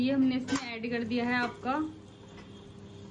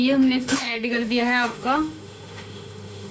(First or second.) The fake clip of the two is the second